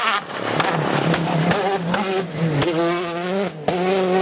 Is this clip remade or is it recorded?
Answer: recorded